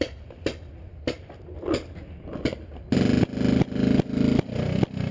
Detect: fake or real real